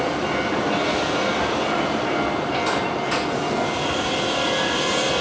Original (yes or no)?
yes